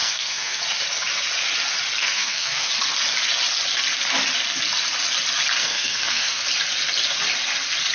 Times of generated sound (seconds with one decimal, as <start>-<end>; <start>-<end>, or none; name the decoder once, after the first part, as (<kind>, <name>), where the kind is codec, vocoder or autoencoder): 0.0-0.6 (codec, SNAC); 2.0-2.7; 5.6-6.4